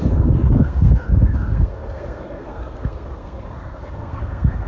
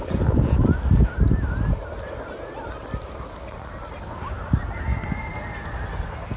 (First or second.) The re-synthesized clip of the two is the first